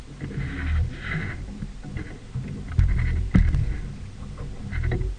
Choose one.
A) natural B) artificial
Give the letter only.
A